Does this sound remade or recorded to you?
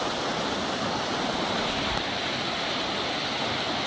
recorded